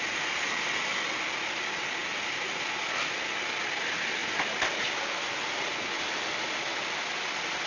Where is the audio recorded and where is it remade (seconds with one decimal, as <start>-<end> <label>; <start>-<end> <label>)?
0.0-7.7 recorded